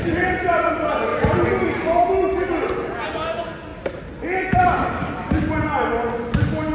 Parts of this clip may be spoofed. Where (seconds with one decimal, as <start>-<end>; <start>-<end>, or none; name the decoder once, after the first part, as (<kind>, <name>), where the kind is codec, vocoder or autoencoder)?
1.1-2.4 (vocoder, BigVGAN v2); 3.7-5.5